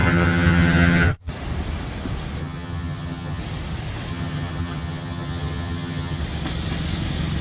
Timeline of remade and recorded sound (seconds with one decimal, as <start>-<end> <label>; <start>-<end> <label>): 0.0-1.3 remade; 1.3-2.4 recorded; 2.4-3.4 remade; 3.4-4.1 recorded; 4.1-6.2 remade; 6.2-7.4 recorded